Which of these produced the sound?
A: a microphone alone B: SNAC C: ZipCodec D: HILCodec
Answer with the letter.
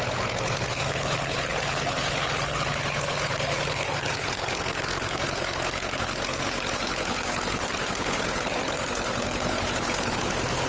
D